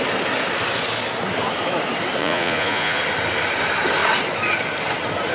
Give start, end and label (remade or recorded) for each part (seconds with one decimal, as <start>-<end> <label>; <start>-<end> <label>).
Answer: 0.0-2.2 recorded; 2.2-3.0 remade; 3.0-5.3 recorded